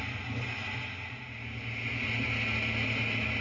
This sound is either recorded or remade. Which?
recorded